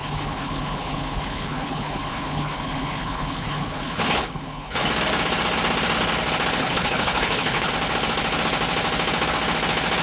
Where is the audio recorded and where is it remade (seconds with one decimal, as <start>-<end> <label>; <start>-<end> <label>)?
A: 0.0-4.9 remade; 4.9-6.6 recorded; 6.6-7.7 remade; 7.7-10.0 recorded